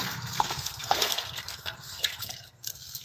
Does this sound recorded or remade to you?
remade